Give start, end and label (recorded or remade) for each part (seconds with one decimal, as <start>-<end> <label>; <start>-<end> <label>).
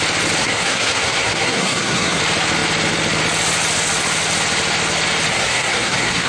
0.0-0.4 recorded; 0.4-2.2 remade; 2.2-5.3 recorded; 5.3-6.3 remade